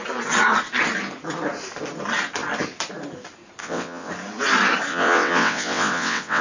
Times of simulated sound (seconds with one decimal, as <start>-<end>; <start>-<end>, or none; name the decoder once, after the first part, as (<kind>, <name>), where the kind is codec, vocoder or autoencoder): 3.6-4.1 (vocoder, WaveNeXt); 4.9-6.4